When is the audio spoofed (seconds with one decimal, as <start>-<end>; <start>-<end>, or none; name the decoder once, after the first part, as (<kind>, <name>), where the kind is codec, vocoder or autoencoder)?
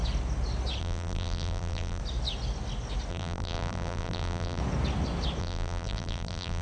0.8-2.0 (vocoder, BigVGAN v2); 3.1-4.6; 5.4-6.6